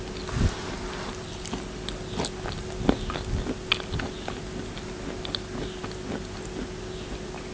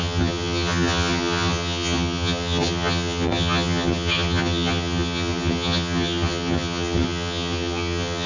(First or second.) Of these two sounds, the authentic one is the first